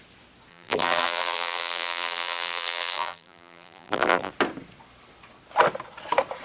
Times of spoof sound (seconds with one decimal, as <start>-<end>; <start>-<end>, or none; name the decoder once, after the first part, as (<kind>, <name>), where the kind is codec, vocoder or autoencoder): 0.5-4.3 (vocoder, BigVGAN v2)

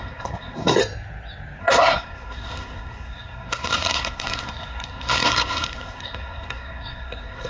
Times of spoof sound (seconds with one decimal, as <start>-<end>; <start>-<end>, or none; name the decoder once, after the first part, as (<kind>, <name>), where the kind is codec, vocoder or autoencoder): 0.0-0.8 (codec, SNAC); 1.6-7.5

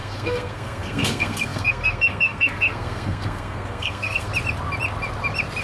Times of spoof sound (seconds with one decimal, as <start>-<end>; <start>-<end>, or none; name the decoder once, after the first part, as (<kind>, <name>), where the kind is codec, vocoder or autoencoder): 0.0-4.3 (codec, SNAC)

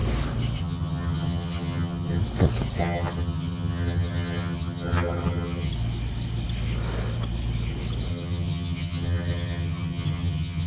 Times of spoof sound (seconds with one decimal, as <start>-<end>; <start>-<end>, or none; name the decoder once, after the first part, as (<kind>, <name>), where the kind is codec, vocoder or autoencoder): 0.6-2.2 (vocoder, HiFi-GAN); 2.8-5.7; 8.1-10.7

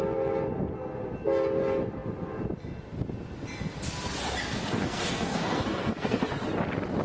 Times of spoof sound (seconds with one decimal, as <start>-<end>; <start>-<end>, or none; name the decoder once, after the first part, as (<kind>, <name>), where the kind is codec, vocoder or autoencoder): 4.4-6.2 (codec, SNAC)